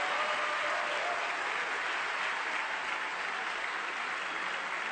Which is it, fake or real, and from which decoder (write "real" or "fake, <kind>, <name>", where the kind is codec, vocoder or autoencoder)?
real